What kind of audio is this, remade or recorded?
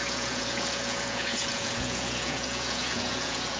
remade